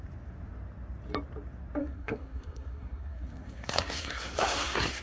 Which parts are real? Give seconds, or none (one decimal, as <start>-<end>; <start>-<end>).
0.0-1.8